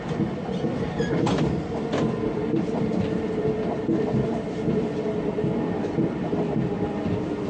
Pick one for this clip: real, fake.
fake